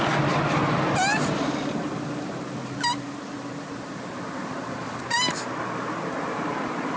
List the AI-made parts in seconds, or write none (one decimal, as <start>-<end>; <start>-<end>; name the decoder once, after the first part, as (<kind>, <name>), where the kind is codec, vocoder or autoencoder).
1.1-2.2 (vocoder, BigVGAN v2); 4.4-5.0